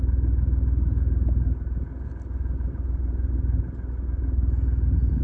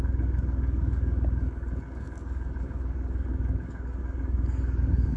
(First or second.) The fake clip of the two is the second